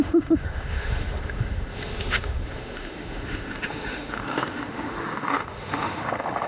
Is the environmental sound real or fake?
fake